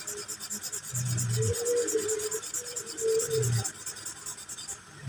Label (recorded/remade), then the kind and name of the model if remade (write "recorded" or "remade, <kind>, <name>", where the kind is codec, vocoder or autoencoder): recorded